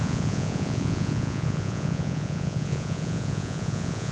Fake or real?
fake